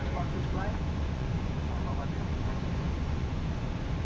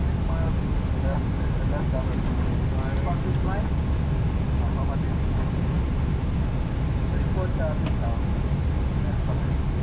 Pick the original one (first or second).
second